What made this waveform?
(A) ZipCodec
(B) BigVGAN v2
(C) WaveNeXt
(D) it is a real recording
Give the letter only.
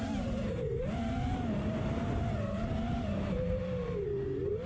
D